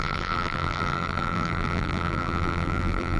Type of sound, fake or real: fake